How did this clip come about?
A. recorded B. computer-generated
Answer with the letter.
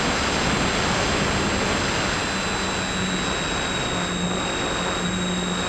A